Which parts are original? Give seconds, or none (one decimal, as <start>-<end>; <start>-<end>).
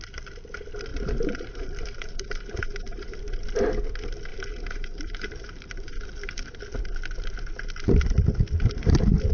0.0-0.9; 3.2-4.3; 6.6-9.3